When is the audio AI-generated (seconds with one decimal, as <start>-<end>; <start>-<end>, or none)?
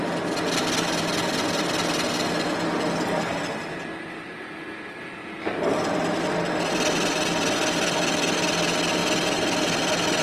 9.0-10.2